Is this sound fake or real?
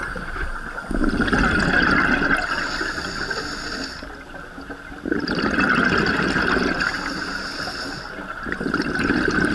real